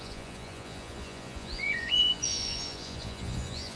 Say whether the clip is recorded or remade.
remade